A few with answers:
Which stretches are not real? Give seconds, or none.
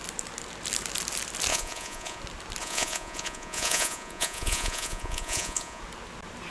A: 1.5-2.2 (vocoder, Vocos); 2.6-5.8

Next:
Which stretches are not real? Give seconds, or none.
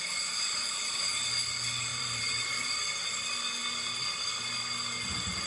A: 1.9-2.8 (vocoder, BigVGAN v2)